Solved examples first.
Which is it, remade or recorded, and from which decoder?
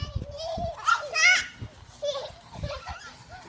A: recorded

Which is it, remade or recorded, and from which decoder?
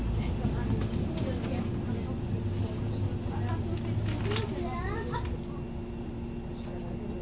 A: recorded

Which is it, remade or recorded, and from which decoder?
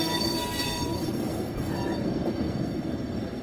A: remade, codec, SNAC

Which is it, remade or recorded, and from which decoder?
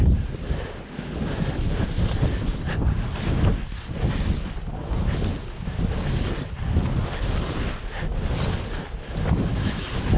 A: recorded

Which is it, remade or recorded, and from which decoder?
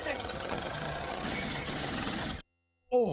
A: remade, vocoder, HiFi-GAN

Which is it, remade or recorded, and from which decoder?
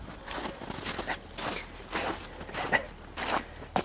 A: recorded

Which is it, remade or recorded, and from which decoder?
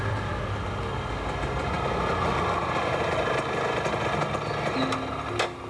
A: recorded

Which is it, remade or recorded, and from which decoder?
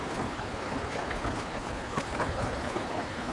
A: remade, codec, HILCodec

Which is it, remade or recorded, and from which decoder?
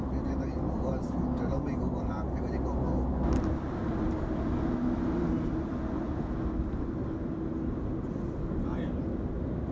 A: recorded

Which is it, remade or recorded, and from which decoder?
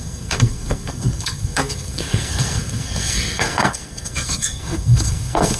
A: remade, codec, SNAC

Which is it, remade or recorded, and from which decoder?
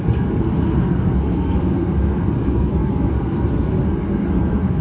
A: remade, codec, SNAC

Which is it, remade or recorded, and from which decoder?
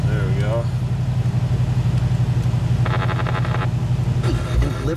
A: recorded